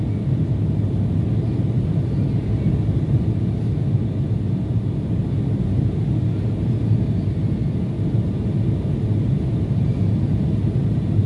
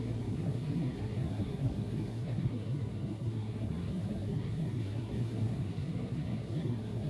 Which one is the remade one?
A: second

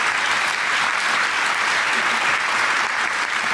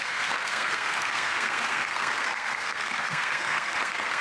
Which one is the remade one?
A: second